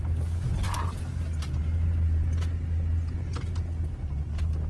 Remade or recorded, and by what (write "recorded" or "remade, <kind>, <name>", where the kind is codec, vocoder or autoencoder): recorded